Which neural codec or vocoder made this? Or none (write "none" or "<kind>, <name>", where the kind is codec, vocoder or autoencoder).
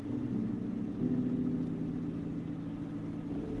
none